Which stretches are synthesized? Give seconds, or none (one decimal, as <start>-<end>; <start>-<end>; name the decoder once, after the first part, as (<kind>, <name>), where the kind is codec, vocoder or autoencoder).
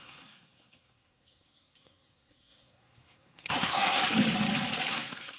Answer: 0.0-4.0 (codec, SNAC); 4.9-5.4